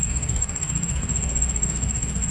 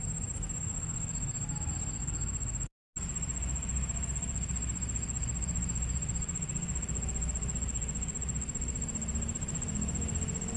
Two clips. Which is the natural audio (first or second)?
second